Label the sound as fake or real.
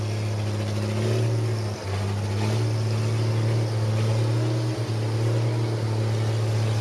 real